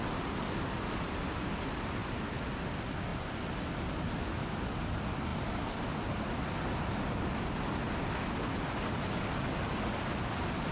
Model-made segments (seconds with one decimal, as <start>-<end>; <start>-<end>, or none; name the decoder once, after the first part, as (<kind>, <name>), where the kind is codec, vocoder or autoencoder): 2.0-2.6 (vocoder, BigVGAN v2)